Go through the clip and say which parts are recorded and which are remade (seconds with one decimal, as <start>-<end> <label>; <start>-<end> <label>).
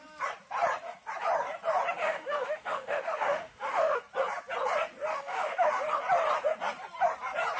0.0-2.0 recorded; 2.0-4.0 remade; 4.0-5.1 recorded; 5.1-5.7 remade; 5.7-7.6 recorded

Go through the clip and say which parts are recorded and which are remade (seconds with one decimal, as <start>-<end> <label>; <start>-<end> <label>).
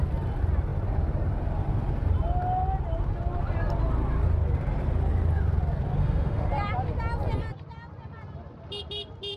0.0-6.0 recorded; 6.0-6.5 remade; 6.5-9.4 recorded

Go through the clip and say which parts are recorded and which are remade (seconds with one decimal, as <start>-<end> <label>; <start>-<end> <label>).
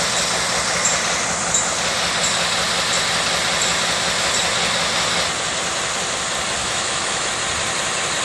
0.0-6.6 recorded; 6.6-7.3 remade; 7.3-8.2 recorded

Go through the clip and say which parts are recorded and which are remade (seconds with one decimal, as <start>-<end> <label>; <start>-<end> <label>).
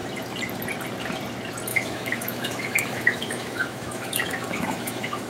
0.0-1.7 recorded; 1.7-5.3 remade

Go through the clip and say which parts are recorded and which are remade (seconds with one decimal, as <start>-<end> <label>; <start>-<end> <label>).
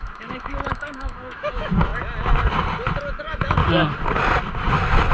0.0-1.9 remade; 1.9-3.2 recorded; 3.2-3.6 remade; 3.6-5.1 recorded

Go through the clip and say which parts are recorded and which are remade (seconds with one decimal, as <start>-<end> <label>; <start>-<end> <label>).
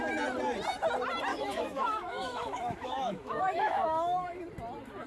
0.0-1.3 recorded; 1.3-4.4 remade; 4.4-5.1 recorded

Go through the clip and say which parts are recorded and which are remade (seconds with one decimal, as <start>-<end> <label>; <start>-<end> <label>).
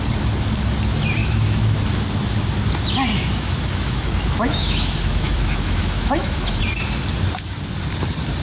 0.0-1.2 recorded; 1.2-1.8 remade; 1.8-3.1 recorded; 3.1-6.6 remade; 6.6-8.4 recorded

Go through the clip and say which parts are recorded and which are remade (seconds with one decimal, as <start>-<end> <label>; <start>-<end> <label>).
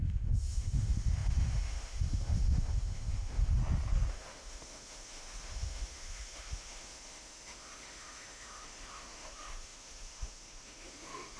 0.0-3.6 remade; 3.6-4.1 recorded; 4.1-11.4 remade